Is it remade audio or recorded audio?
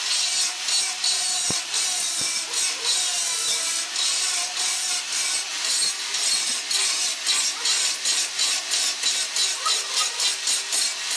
recorded